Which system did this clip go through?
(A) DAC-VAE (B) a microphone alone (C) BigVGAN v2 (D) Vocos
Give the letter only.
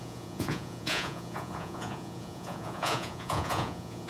D